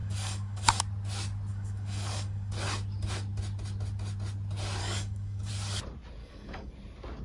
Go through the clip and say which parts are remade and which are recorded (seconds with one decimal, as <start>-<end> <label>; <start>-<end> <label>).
0.0-0.8 remade; 0.8-1.5 recorded; 1.5-2.5 remade; 2.5-4.8 recorded; 4.8-5.5 remade; 5.5-6.2 recorded; 6.2-6.7 remade; 6.7-7.2 recorded